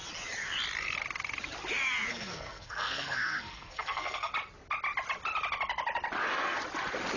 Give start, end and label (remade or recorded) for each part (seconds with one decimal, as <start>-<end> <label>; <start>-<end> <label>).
0.0-2.1 recorded; 2.1-4.3 remade; 4.3-7.2 recorded